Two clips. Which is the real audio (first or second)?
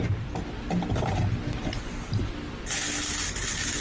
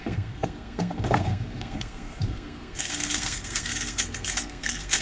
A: first